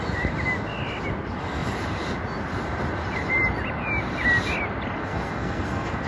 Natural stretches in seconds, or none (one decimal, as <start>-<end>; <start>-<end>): 0.0-5.0